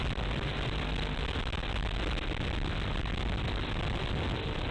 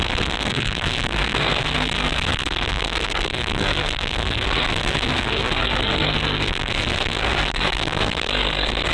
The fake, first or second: second